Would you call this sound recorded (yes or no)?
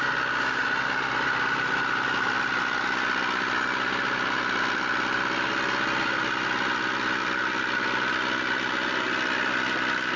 yes